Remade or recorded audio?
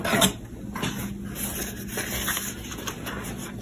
recorded